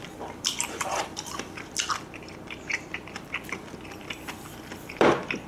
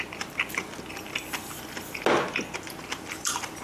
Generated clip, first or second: first